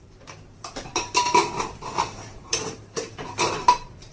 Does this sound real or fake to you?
fake